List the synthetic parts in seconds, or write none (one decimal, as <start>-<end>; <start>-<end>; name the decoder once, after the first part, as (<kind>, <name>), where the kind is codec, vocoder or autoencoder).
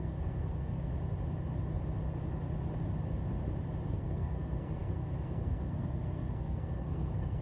0.0-0.9 (codec, SNAC); 3.9-7.4